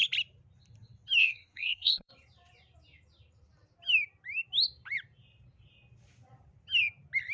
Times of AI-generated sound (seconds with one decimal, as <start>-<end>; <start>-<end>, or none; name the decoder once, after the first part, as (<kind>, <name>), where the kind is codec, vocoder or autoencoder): 1.2-2.1 (codec, SNAC)